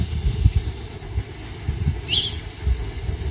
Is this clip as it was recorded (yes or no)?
yes